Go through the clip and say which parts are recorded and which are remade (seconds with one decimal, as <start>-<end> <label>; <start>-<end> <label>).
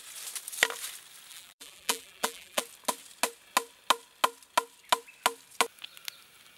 0.0-1.3 recorded; 1.3-2.6 remade; 2.6-6.6 recorded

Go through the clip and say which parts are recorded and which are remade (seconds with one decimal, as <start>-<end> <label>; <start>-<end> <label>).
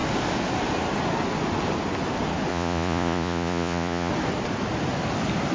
0.0-2.5 recorded; 2.5-4.1 remade; 4.1-5.5 recorded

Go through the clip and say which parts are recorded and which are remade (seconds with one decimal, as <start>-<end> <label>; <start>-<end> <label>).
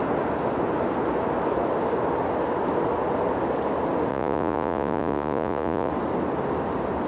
0.0-4.1 recorded; 4.1-5.9 remade; 5.9-7.1 recorded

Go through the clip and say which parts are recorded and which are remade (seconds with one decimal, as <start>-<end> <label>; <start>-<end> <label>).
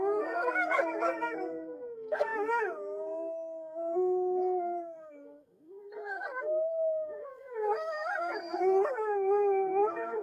0.0-10.2 remade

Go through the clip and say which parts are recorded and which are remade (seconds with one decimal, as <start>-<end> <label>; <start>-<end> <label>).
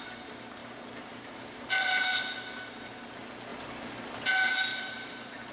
0.0-0.6 recorded; 0.6-2.2 remade; 2.2-4.7 recorded; 4.7-5.5 remade